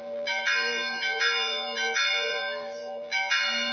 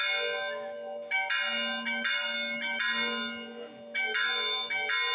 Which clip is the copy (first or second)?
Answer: first